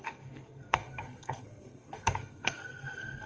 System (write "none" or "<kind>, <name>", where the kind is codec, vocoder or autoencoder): codec, SNAC